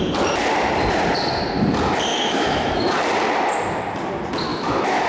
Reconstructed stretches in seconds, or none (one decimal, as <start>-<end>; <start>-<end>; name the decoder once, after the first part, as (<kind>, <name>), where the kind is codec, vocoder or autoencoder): 2.1-3.0 (autoencoder, DAC-VAE); 4.5-5.1